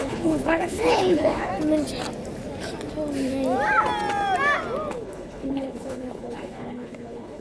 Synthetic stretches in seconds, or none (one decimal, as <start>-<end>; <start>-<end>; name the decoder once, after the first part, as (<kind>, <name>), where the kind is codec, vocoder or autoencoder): 0.0-1.5 (codec, HILCodec); 4.9-7.4